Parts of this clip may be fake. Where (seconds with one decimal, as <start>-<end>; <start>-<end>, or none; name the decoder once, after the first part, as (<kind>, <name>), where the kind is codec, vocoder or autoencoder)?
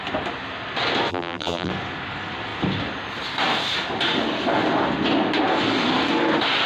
1.1-1.7 (vocoder, BigVGAN v2)